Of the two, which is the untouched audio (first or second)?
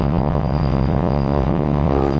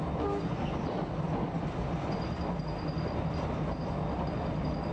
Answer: second